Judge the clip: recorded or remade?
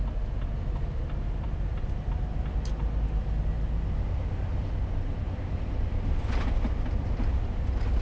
recorded